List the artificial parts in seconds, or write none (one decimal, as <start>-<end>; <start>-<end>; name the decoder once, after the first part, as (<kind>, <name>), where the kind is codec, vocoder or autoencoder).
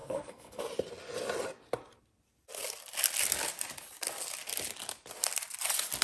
0.0-0.6 (codec, SNAC)